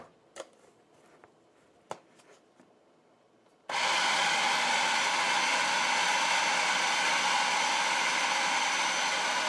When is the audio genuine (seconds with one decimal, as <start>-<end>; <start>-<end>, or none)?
0.0-9.5